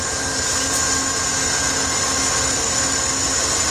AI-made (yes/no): no